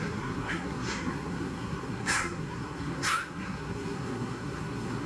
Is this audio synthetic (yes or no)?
yes